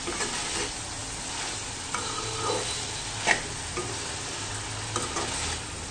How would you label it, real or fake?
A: real